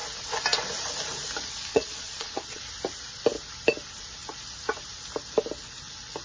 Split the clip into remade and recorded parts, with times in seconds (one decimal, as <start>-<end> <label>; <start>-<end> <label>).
0.0-1.7 recorded; 1.7-2.6 remade; 2.6-6.2 recorded